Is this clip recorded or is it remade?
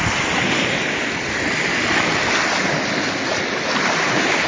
recorded